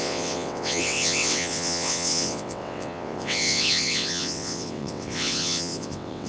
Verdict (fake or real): fake